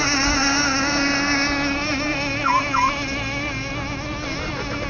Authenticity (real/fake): real